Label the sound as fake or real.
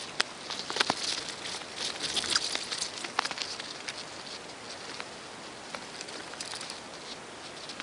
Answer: real